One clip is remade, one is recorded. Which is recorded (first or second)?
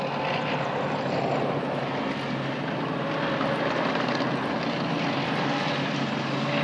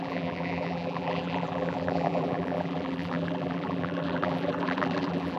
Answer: first